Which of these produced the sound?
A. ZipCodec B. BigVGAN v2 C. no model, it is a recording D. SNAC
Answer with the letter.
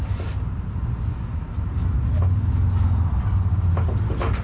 C